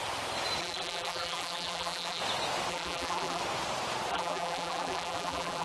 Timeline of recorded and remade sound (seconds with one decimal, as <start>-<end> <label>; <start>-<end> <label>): 0.0-0.6 recorded; 0.6-2.2 remade; 2.2-2.7 recorded; 2.7-3.4 remade; 3.4-4.1 recorded; 4.1-5.6 remade